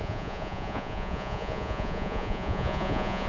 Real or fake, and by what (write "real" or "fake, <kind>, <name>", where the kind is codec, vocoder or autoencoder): fake, vocoder, Vocos